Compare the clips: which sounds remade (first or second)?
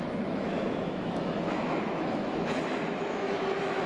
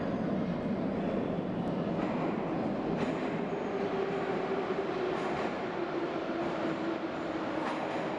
first